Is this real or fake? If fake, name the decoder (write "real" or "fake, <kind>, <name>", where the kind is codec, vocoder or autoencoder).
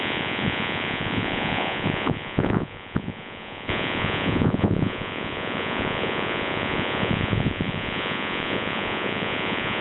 fake, vocoder, Vocos